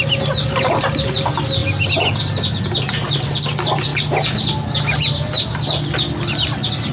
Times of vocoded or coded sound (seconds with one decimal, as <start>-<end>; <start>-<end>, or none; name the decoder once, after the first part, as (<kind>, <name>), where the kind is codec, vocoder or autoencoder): none